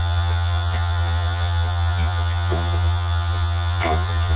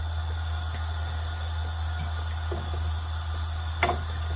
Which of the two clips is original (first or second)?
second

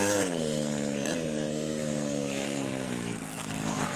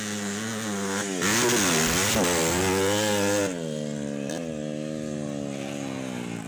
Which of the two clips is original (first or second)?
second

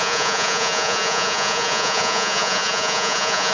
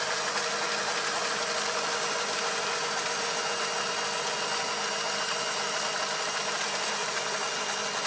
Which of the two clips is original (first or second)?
second